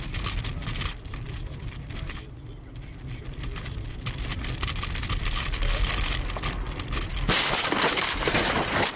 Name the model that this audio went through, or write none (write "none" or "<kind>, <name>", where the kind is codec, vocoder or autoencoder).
vocoder, BigVGAN v2